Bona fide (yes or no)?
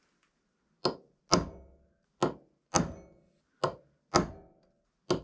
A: yes